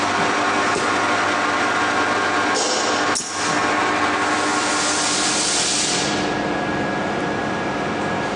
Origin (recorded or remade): recorded